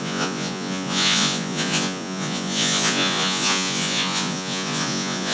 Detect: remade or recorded remade